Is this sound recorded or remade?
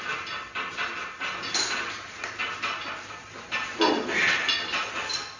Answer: recorded